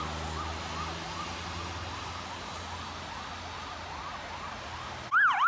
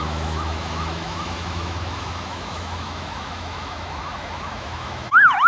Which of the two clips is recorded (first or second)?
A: first